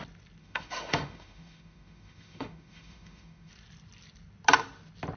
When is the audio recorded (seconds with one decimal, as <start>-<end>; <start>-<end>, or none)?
0.0-0.4; 3.5-5.2